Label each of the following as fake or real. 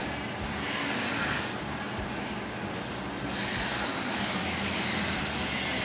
real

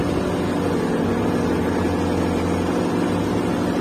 real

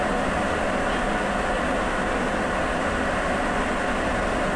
real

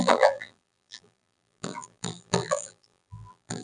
fake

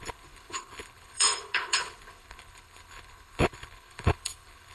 fake